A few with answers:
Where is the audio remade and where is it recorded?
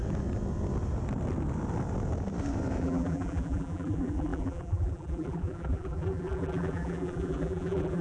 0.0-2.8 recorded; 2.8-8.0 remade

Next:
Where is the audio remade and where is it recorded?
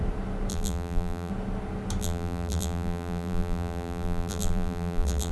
0.0-0.5 recorded; 0.5-1.3 remade; 1.3-2.0 recorded; 2.0-5.3 remade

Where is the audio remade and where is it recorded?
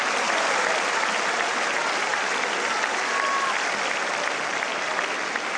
0.0-5.6 recorded